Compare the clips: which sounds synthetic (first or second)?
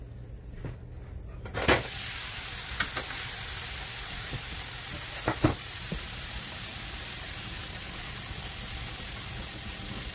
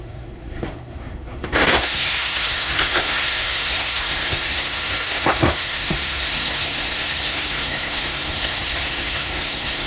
second